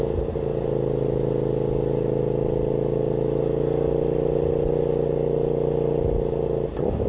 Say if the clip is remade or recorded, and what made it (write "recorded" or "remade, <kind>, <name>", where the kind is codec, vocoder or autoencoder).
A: recorded